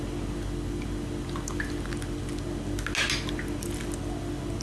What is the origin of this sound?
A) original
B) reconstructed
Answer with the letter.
A